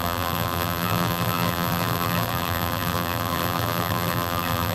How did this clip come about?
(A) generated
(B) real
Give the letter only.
A